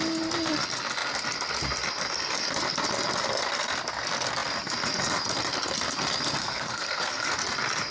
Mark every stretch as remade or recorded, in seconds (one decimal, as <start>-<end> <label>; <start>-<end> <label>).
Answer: 0.0-6.4 recorded; 6.4-7.3 remade; 7.3-7.9 recorded